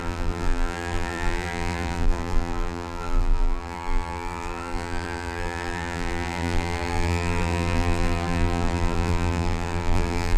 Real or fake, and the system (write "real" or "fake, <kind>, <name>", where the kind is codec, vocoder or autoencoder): fake, vocoder, BigVGAN v2